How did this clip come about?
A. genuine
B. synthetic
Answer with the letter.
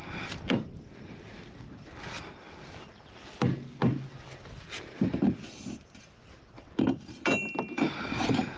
A